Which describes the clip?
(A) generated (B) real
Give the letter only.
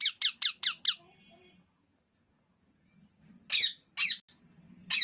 B